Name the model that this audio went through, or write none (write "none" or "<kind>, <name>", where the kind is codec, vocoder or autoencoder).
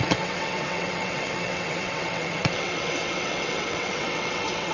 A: vocoder, WaveNeXt